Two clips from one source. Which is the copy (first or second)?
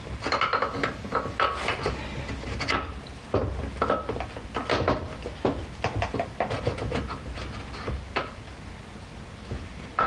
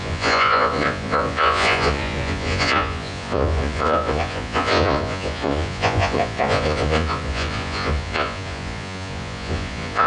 second